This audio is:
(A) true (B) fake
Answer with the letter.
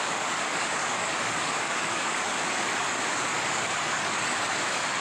B